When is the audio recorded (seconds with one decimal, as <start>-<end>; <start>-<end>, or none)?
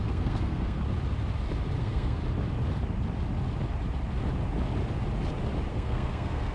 0.8-1.8; 2.2-5.7